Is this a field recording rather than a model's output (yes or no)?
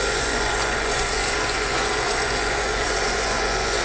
no